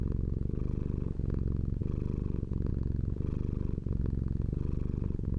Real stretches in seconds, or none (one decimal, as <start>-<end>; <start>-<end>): 0.0-5.4

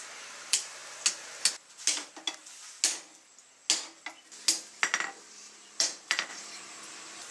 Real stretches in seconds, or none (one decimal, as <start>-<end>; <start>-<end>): 0.8-5.2

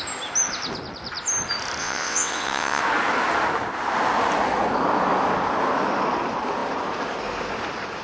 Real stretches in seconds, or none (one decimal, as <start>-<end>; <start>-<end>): 0.0-1.8; 2.8-8.0

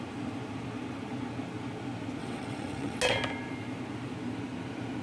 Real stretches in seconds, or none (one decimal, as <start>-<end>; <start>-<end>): 0.0-2.2; 3.0-5.0

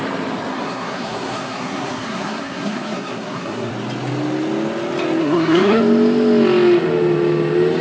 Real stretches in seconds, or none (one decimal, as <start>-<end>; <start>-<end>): 0.0-0.5; 3.7-5.2; 5.8-7.8

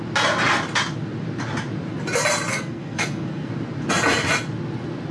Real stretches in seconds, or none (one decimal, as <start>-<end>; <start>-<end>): 0.0-2.5; 3.5-5.1